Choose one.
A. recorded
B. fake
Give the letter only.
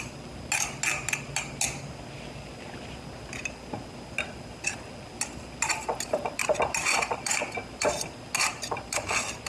A